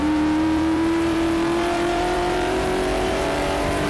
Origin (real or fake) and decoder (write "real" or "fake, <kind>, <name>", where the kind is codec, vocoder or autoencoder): fake, vocoder, BigVGAN v2